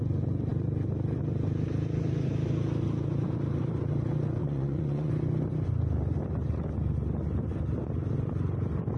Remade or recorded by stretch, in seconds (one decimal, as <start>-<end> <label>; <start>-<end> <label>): 0.0-4.4 recorded; 4.4-5.1 remade; 5.1-9.0 recorded